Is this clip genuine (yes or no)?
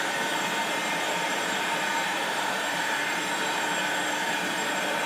no